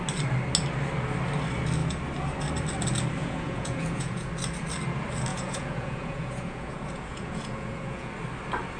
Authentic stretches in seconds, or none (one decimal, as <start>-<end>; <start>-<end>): 0.0-3.2; 4.3-5.3; 8.1-8.8